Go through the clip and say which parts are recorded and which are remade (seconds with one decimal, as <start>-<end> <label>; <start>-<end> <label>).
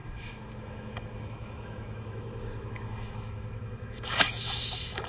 0.0-5.1 remade